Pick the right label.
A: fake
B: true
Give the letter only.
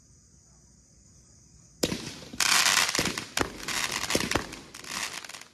B